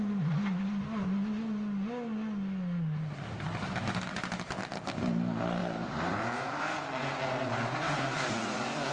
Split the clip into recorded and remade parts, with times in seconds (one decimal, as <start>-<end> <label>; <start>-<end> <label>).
0.0-5.6 recorded; 5.6-8.9 remade